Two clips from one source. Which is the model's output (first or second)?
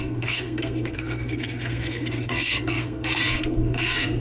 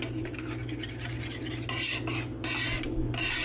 first